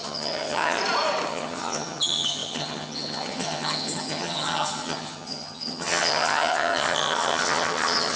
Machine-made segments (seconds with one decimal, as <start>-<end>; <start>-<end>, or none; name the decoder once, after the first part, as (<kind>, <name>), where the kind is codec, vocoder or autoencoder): 0.0-0.8 (vocoder, HiFi-GAN); 1.3-8.2